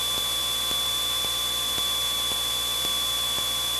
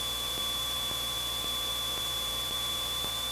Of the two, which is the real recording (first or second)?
first